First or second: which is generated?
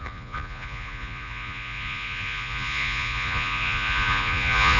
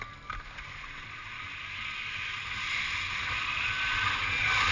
first